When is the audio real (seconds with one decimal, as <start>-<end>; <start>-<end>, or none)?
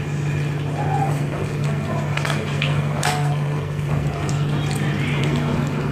0.0-1.0; 4.5-5.2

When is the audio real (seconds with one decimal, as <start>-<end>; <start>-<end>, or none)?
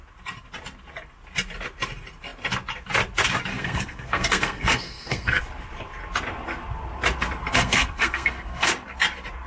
0.0-3.5; 5.4-7.5; 8.7-9.5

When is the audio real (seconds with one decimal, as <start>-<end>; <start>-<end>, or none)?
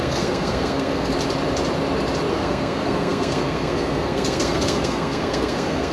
1.1-2.3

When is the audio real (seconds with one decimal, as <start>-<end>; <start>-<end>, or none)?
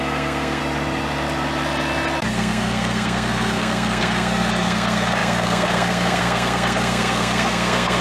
0.6-2.2